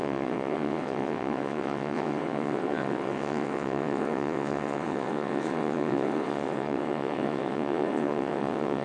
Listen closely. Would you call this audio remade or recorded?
remade